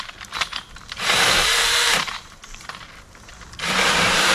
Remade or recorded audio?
remade